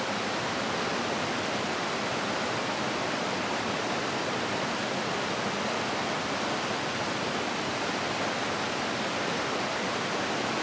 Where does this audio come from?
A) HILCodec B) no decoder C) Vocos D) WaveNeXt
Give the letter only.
B